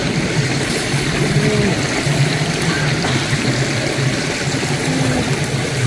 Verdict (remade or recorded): recorded